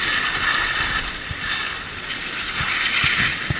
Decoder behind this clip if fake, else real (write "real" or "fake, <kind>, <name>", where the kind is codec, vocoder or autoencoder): real